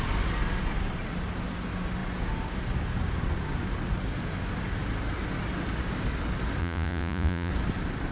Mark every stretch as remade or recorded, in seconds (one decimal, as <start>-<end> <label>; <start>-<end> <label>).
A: 0.0-6.6 recorded; 6.6-7.5 remade; 7.5-8.1 recorded